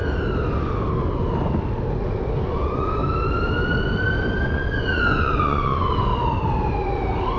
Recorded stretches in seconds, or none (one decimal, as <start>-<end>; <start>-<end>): 0.0-2.5; 3.0-4.4; 6.1-7.4